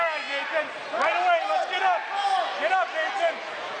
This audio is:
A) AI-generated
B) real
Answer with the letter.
B